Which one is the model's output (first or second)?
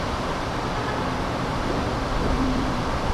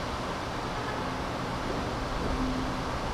first